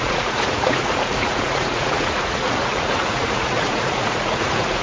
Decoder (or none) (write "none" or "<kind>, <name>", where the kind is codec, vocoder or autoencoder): vocoder, Vocos